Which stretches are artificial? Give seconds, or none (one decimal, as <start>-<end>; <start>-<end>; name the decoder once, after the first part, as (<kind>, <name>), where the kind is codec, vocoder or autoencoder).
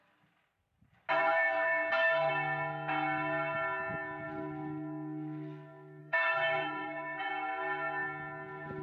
1.2-2.3 (codec, SNAC); 6.0-7.3